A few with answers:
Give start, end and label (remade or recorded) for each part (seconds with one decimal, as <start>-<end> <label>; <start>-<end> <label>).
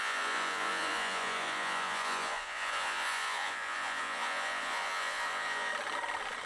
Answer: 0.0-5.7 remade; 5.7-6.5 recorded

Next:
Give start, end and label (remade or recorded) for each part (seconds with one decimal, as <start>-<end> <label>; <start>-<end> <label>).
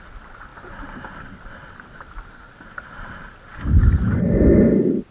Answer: 0.0-5.1 recorded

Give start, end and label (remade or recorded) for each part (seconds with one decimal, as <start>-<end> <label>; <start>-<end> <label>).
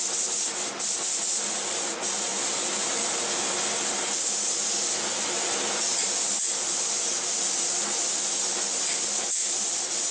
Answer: 0.0-10.1 recorded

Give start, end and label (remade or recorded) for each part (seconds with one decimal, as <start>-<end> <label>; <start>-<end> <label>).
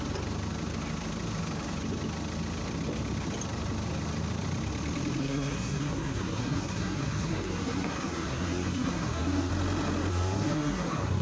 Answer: 0.0-5.2 recorded; 5.2-9.5 remade; 9.5-10.1 recorded; 10.1-11.2 remade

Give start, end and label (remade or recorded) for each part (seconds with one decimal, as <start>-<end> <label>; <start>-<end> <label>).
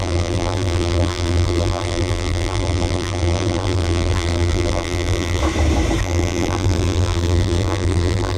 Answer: 0.0-5.4 remade; 5.4-6.0 recorded; 6.0-8.4 remade